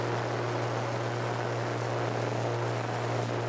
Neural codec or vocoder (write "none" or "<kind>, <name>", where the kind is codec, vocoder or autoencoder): none